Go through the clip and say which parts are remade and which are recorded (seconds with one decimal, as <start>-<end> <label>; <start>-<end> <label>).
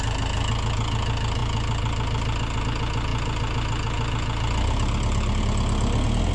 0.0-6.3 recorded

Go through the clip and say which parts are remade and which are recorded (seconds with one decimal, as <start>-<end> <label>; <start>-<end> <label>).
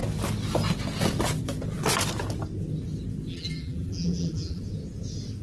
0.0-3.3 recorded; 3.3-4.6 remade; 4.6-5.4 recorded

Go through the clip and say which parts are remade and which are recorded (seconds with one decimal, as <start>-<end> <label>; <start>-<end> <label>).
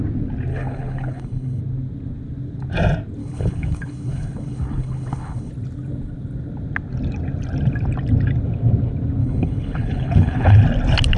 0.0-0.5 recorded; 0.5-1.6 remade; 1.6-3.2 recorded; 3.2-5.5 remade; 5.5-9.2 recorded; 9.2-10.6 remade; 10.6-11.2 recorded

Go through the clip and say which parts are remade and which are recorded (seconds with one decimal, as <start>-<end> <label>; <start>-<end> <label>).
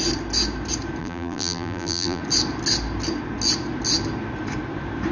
0.0-1.0 recorded; 1.0-2.2 remade; 2.2-5.1 recorded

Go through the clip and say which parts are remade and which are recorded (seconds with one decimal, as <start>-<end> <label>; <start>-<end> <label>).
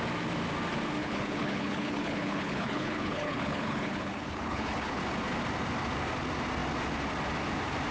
0.0-1.0 recorded; 1.0-5.0 remade; 5.0-7.9 recorded